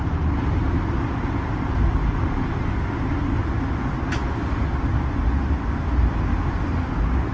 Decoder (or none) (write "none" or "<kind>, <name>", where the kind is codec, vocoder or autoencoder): none